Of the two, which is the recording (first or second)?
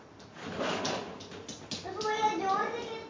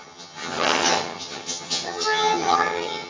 first